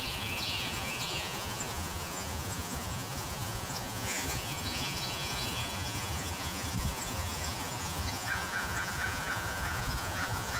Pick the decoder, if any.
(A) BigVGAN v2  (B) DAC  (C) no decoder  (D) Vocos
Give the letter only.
D